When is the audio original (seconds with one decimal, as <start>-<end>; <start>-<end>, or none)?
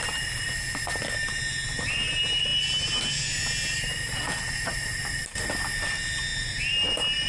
0.0-7.3